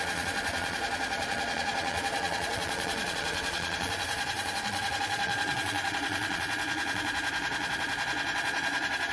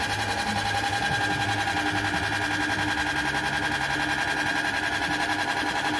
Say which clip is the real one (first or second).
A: second